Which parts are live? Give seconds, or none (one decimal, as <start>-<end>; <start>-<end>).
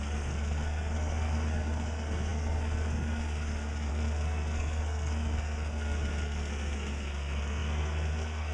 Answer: none